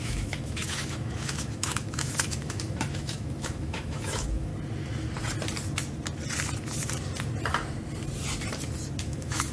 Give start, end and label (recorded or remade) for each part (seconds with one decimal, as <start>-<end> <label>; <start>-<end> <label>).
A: 0.0-4.5 remade; 4.5-9.0 recorded; 9.0-9.5 remade

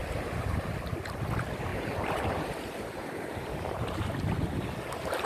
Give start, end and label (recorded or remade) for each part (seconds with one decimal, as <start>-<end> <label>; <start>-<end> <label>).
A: 0.0-0.7 remade; 0.7-1.7 recorded; 1.7-4.5 remade; 4.5-5.3 recorded

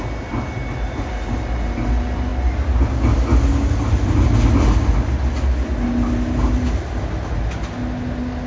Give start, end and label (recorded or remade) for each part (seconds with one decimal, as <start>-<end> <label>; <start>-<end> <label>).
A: 0.0-8.5 recorded

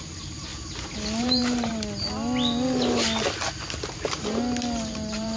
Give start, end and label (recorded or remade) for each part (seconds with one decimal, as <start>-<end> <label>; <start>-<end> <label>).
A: 0.0-0.5 remade; 0.5-1.2 recorded; 1.2-1.7 remade; 1.7-4.9 recorded; 4.9-5.4 remade